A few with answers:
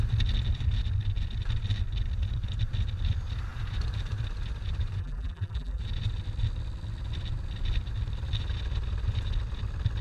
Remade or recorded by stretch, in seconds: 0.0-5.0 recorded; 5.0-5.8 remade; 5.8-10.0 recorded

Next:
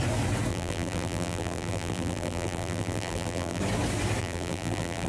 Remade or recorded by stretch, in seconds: 0.0-0.5 recorded; 0.5-3.6 remade; 3.6-4.2 recorded; 4.2-5.1 remade

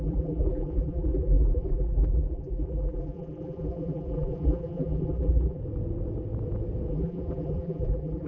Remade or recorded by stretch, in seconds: 0.0-5.6 remade; 5.6-6.9 recorded; 6.9-8.3 remade

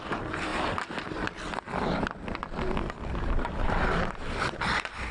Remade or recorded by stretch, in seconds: 0.0-0.5 remade; 0.5-2.9 recorded; 2.9-5.1 remade